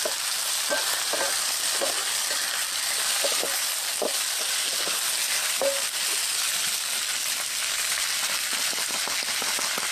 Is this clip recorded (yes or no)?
yes